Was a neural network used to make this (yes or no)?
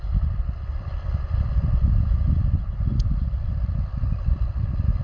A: no